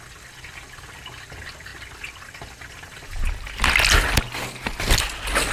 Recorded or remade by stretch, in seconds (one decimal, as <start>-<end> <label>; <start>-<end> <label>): 0.0-5.5 recorded